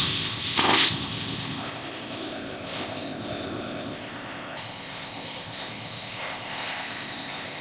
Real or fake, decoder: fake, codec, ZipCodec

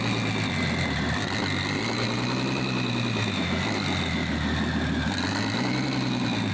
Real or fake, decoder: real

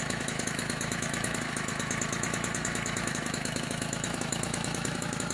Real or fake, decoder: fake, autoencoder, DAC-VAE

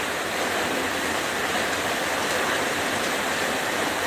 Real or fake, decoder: fake, vocoder, BigVGAN v2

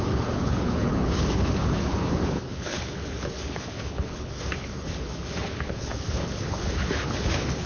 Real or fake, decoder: fake, codec, HILCodec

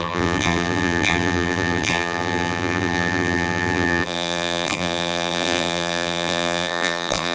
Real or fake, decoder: fake, vocoder, BigVGAN v2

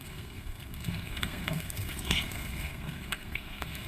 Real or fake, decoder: fake, codec, SNAC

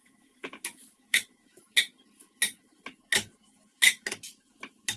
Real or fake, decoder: fake, autoencoder, DAC-VAE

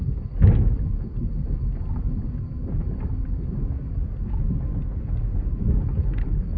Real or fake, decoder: real